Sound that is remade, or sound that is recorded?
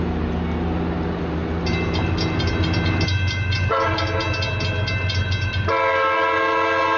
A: recorded